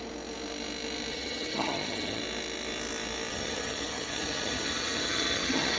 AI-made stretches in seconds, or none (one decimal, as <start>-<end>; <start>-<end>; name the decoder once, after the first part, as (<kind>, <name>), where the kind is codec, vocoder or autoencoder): 1.1-2.2 (vocoder, HiFi-GAN); 3.3-5.8